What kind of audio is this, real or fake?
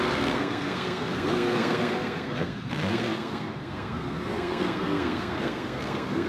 fake